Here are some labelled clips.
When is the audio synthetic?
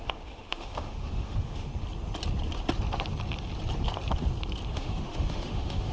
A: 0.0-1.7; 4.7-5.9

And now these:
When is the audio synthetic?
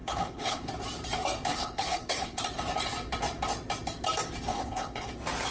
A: 0.0-0.7; 1.5-2.4; 4.5-5.1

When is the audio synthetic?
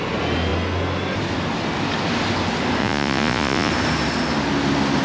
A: 2.8-3.7